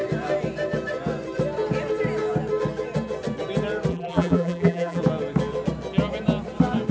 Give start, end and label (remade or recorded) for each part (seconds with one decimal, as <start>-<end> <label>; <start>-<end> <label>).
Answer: 0.0-3.9 recorded; 3.9-5.0 remade; 5.0-6.9 recorded